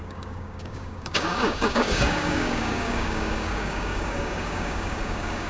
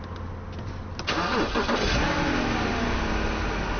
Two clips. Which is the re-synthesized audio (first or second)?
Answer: first